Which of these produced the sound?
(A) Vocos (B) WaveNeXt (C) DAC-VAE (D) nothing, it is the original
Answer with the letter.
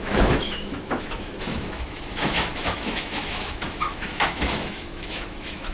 C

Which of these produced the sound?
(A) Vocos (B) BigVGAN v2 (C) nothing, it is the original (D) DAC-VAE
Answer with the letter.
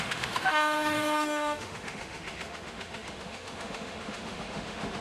D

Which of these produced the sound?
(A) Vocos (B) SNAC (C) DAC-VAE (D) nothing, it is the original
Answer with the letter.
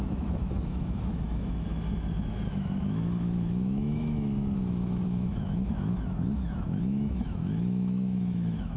C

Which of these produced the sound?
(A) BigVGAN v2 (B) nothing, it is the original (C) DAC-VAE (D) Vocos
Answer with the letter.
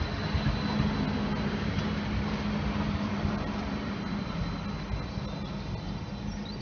B